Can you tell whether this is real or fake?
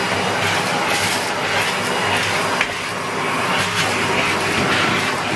real